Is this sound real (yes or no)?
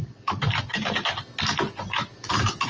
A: yes